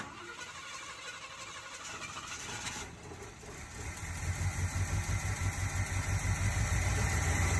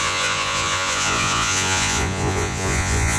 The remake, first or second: second